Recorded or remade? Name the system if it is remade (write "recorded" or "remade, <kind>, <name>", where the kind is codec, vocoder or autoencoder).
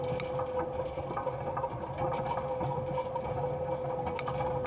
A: recorded